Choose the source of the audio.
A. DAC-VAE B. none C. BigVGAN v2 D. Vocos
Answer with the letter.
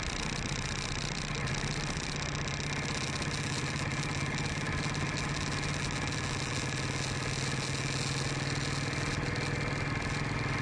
B